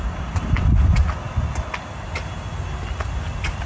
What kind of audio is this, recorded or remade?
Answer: recorded